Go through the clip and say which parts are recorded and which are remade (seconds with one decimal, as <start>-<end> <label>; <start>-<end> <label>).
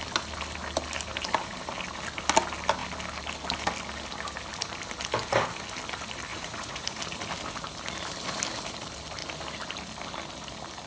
0.0-6.3 recorded; 6.3-7.0 remade; 7.0-10.9 recorded